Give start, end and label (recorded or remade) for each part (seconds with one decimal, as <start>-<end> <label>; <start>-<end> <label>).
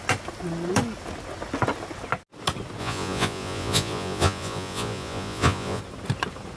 0.0-2.8 recorded; 2.8-5.8 remade; 5.8-6.6 recorded